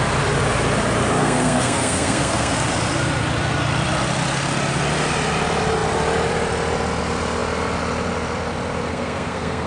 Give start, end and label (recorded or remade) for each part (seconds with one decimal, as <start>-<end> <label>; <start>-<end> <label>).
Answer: 0.0-1.2 recorded; 1.2-2.5 remade; 2.5-8.9 recorded; 8.9-9.7 remade

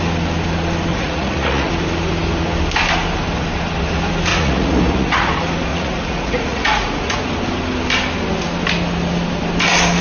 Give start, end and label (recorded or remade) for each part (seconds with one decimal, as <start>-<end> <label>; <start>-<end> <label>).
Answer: 0.0-0.9 recorded; 0.9-1.7 remade; 1.7-4.3 recorded; 4.3-5.3 remade; 5.3-5.7 recorded; 5.7-7.2 remade; 7.2-10.0 recorded